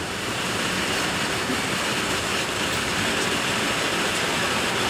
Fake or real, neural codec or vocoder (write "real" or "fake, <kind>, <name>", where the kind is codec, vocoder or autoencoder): fake, vocoder, BigVGAN v2